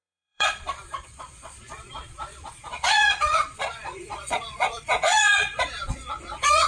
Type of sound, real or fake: fake